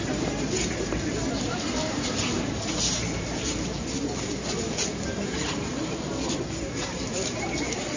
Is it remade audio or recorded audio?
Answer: remade